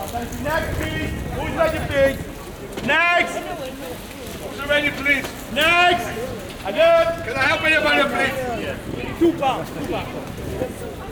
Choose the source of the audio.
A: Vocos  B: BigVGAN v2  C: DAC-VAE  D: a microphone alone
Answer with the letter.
D